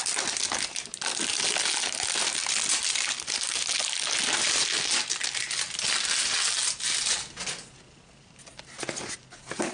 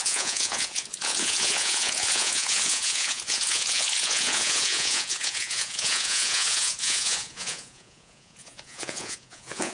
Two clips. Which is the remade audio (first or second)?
second